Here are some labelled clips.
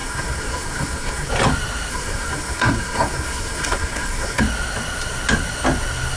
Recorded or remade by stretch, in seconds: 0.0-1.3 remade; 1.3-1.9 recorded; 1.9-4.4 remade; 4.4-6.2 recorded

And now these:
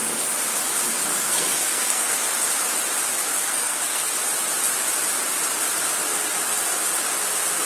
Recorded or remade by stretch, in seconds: 0.0-1.1 recorded; 1.1-2.2 remade; 2.2-3.3 recorded; 3.3-4.1 remade; 4.1-7.7 recorded

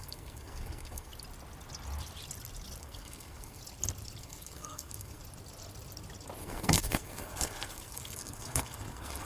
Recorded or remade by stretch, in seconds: 0.0-1.1 remade; 1.1-2.8 recorded; 2.8-3.6 remade; 3.6-4.2 recorded; 4.2-5.2 remade; 5.2-6.4 recorded; 6.4-9.3 remade

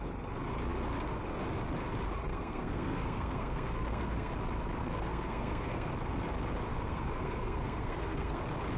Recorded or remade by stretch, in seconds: 0.0-2.3 recorded; 2.3-4.3 remade; 4.3-4.8 recorded; 4.8-5.9 remade; 5.9-6.7 recorded; 6.7-8.4 remade; 8.4-8.8 recorded

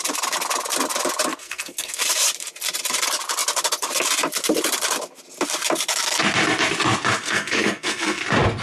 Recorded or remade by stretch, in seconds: 0.0-1.3 recorded; 1.3-2.0 remade; 2.0-7.2 recorded; 7.2-8.2 remade; 8.2-8.6 recorded

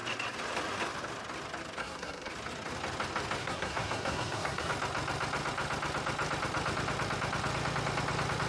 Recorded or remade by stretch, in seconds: 0.0-1.8 recorded; 1.8-2.3 remade; 2.3-3.4 recorded; 3.4-4.7 remade; 4.7-8.5 recorded